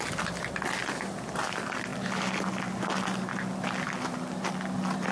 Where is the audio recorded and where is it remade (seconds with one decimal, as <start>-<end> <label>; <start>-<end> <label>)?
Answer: 0.0-5.1 recorded